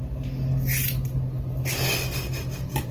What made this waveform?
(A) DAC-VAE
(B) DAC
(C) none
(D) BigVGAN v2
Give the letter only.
C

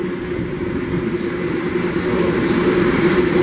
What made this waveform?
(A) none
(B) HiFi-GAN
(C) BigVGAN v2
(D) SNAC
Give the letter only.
C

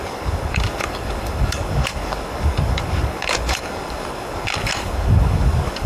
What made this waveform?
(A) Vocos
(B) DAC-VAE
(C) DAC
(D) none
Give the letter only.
C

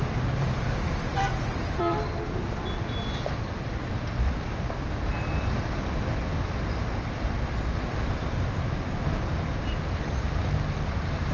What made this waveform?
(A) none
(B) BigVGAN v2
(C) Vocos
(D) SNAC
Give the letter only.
B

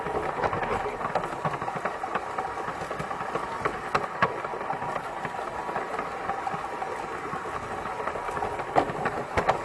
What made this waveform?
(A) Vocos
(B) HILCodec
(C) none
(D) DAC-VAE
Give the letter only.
C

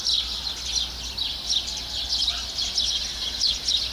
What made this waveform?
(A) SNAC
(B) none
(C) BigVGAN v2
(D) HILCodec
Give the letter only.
B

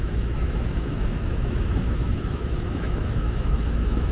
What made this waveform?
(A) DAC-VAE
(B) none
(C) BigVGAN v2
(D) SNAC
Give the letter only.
A